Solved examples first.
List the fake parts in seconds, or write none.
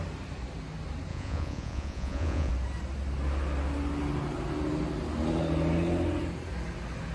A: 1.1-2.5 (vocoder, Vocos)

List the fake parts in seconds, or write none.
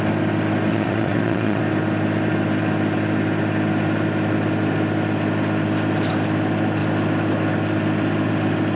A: 0.7-1.6 (vocoder, Vocos)